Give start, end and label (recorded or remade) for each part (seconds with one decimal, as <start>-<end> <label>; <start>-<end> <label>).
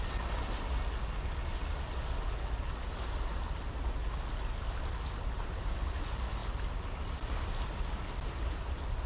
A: 0.0-9.1 recorded